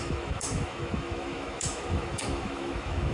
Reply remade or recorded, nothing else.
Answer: remade